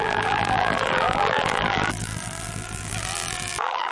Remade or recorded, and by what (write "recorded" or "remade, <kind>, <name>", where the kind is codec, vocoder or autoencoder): remade, vocoder, BigVGAN v2